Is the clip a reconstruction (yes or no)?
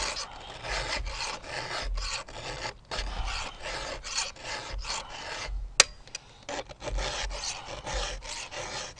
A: no